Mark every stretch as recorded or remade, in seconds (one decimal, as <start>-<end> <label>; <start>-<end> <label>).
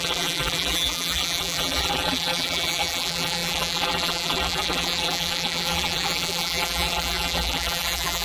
0.0-8.2 remade